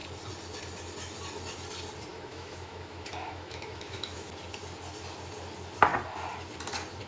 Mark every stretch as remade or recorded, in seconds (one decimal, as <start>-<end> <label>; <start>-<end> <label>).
0.0-2.1 recorded; 2.1-4.3 remade; 4.3-7.1 recorded